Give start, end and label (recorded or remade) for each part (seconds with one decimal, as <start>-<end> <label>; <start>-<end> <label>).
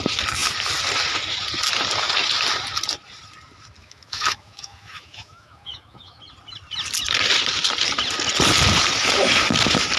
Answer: 0.0-3.8 recorded; 3.8-6.2 remade; 6.2-10.0 recorded